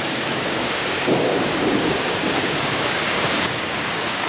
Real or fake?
fake